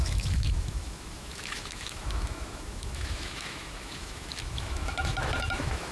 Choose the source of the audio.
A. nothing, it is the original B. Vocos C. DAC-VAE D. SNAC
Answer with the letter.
C